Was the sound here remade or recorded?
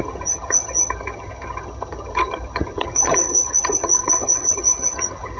remade